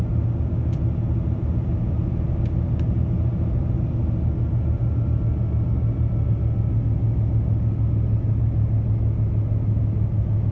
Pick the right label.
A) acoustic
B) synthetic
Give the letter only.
A